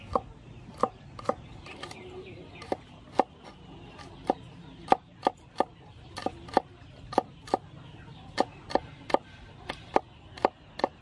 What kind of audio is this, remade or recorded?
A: recorded